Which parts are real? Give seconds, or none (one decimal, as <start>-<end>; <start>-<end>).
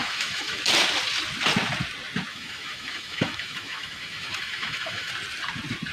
0.6-2.3; 5.1-5.9